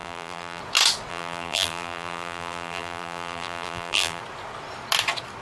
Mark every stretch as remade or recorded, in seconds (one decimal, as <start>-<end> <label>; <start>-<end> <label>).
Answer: 0.0-0.6 remade; 0.6-1.1 recorded; 1.1-4.2 remade; 4.2-5.4 recorded